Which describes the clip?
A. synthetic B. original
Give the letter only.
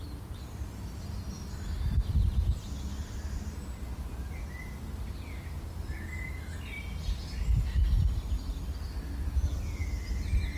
B